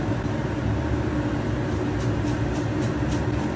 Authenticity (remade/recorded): recorded